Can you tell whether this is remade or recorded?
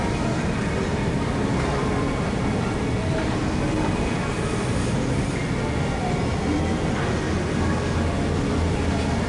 recorded